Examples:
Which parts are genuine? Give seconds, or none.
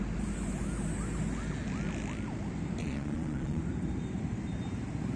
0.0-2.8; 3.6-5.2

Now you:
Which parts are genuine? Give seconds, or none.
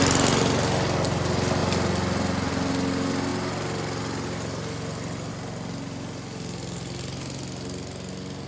0.0-8.5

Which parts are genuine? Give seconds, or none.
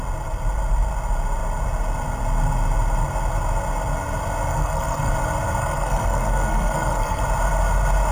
0.0-4.5; 5.1-5.6; 7.2-8.1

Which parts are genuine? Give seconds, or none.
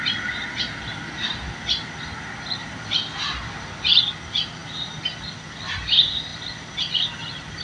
0.0-7.6